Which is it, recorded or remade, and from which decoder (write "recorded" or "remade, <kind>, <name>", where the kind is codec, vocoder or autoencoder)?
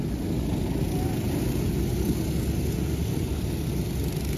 recorded